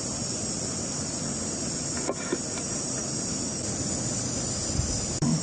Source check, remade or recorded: remade